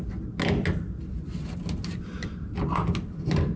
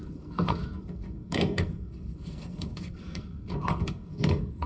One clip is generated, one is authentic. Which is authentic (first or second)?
first